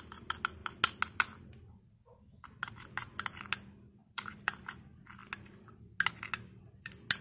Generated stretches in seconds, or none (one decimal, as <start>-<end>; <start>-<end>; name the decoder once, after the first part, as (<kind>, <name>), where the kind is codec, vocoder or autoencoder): 4.0-4.7 (vocoder, BigVGAN v2)